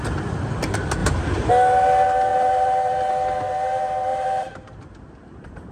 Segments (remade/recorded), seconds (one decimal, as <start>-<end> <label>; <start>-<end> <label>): 0.0-1.0 recorded; 1.0-1.5 remade; 1.5-2.3 recorded; 2.3-3.1 remade; 3.1-4.1 recorded; 4.1-4.8 remade; 4.8-5.7 recorded